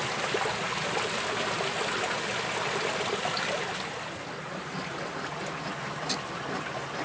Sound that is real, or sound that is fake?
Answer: real